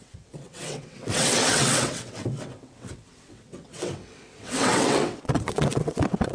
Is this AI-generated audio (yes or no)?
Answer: yes